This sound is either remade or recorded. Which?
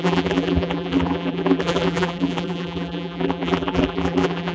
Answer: remade